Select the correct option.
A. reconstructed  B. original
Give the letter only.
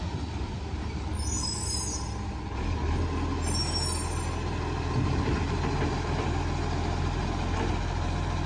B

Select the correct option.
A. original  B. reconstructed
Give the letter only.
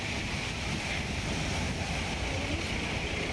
A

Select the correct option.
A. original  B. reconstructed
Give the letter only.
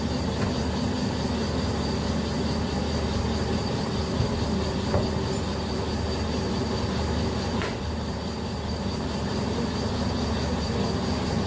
A